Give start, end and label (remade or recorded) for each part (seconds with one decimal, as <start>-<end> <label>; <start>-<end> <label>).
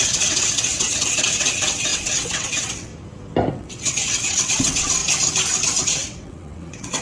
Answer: 0.0-2.9 remade; 2.9-3.5 recorded; 3.5-5.0 remade; 5.0-5.8 recorded; 5.8-7.0 remade